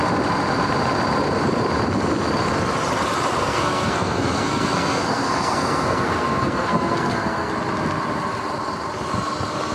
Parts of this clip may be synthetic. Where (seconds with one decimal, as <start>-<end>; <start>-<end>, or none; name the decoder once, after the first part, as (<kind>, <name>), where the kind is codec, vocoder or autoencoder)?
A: 3.4-7.5 (codec, SNAC)